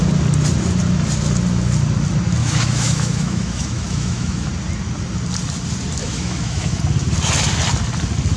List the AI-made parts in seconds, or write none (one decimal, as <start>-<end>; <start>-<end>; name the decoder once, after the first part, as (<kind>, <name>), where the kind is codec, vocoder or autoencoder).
2.4-4.5 (autoencoder, DAC-VAE); 6.0-6.8